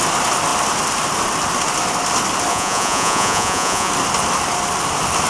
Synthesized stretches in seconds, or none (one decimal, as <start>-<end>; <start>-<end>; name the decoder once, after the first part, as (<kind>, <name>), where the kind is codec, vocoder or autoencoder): 2.5-3.9 (vocoder, Vocos)